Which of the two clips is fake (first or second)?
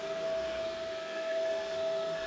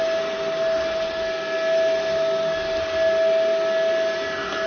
first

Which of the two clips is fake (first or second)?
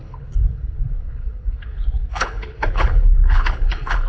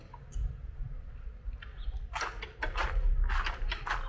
first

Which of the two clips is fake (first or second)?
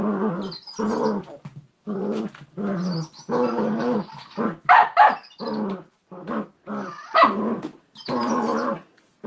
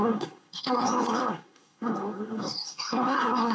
second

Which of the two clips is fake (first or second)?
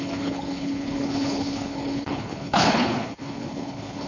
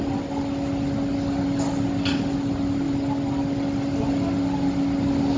first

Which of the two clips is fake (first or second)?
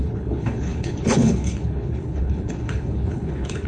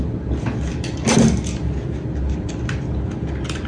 first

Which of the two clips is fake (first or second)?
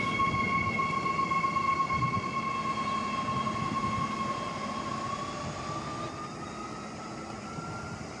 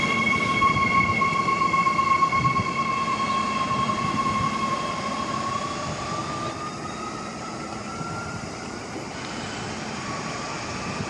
second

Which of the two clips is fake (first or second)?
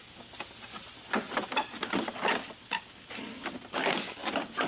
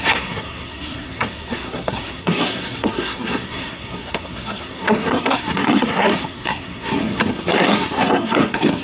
second